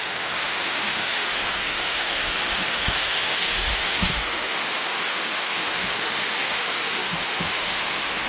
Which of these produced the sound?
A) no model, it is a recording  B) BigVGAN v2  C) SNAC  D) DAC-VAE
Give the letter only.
D